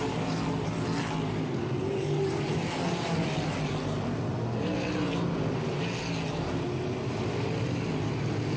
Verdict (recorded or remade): recorded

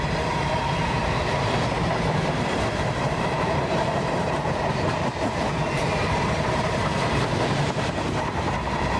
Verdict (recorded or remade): remade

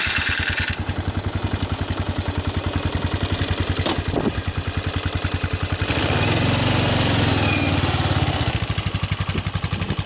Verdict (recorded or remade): recorded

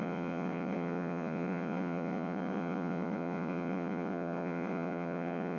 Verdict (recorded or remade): remade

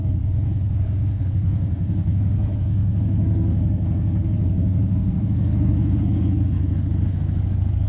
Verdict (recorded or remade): remade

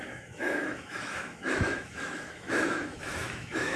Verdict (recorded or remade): remade